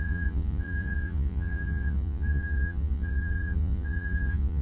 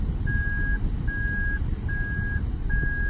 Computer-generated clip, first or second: first